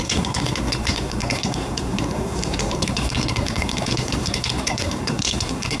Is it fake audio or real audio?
fake